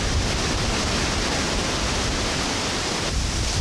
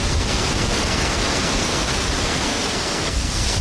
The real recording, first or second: first